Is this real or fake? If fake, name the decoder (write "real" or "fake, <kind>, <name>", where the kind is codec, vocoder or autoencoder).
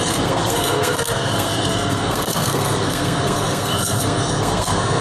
fake, codec, SNAC